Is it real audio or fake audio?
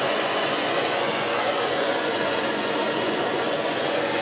fake